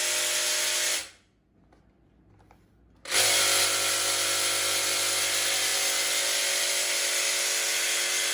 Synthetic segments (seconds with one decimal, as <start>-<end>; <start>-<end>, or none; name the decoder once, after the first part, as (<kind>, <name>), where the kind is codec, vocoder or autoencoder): none